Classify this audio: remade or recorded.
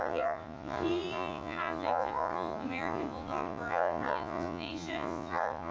remade